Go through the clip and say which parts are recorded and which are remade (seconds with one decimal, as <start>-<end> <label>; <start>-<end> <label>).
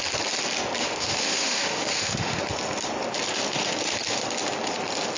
0.0-0.8 recorded; 0.8-2.4 remade; 2.4-5.2 recorded